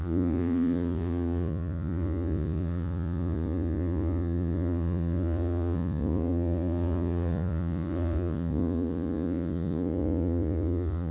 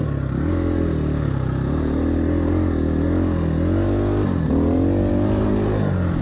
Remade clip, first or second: first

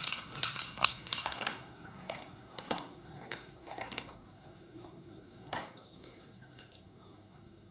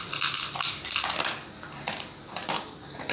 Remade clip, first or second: first